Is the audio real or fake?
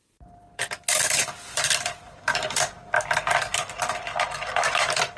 fake